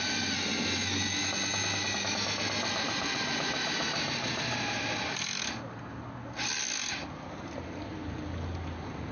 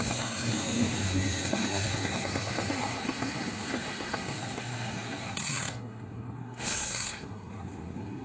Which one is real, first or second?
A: first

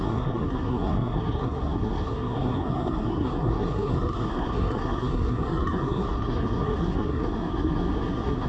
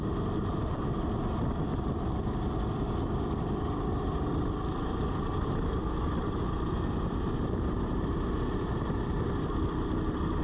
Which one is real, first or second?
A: second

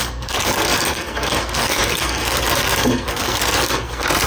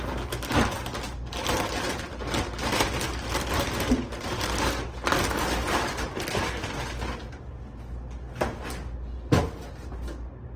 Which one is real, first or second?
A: second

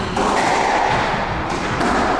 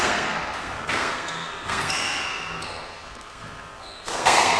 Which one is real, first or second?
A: first